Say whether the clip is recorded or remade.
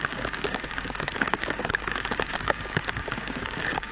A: remade